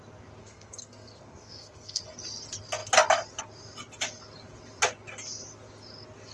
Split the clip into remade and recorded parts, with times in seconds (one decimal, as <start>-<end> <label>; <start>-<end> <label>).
0.0-0.4 recorded; 0.4-2.0 remade; 2.0-6.3 recorded